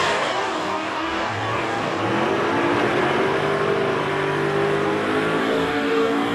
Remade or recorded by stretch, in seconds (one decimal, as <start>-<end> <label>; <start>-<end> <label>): 0.0-2.0 remade; 2.0-5.4 recorded; 5.4-6.3 remade